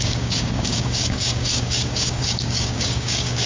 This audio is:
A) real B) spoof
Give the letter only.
B